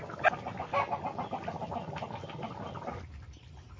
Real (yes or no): yes